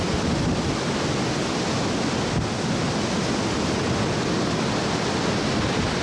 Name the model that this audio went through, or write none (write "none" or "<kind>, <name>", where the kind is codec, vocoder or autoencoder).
none